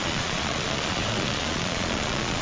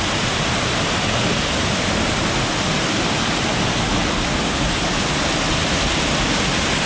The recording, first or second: second